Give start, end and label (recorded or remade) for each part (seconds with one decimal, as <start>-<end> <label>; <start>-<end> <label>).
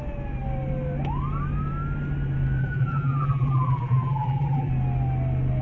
0.0-2.6 recorded; 2.6-4.7 remade; 4.7-5.6 recorded